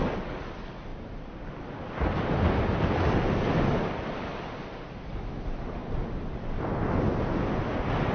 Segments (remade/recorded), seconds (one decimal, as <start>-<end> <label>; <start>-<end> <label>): 0.0-8.1 recorded